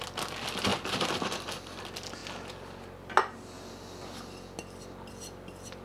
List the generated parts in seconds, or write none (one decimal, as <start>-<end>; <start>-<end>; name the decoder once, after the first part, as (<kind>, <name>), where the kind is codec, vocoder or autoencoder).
0.7-1.8 (vocoder, BigVGAN v2)